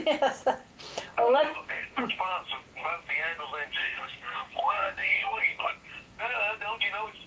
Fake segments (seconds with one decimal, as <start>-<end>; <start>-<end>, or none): 0.6-2.1; 3.8-6.2